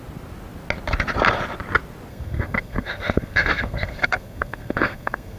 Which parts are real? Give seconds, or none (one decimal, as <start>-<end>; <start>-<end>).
0.0-2.1